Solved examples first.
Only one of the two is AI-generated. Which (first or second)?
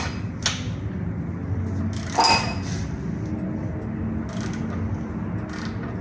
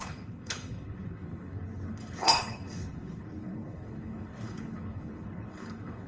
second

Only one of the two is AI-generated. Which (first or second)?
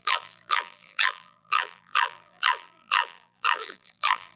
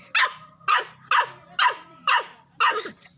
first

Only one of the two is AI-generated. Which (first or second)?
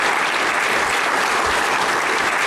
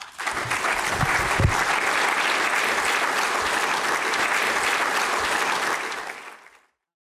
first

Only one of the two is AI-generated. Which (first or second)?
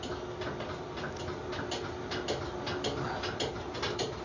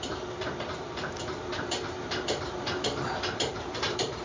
second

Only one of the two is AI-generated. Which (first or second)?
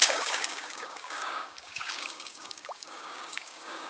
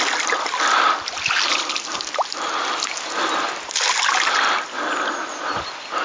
first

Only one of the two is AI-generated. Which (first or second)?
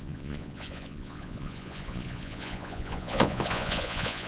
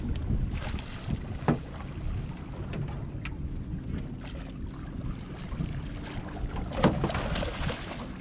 first